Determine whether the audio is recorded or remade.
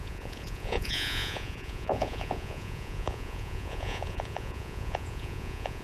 remade